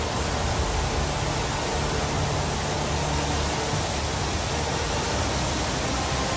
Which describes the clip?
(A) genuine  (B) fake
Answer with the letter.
A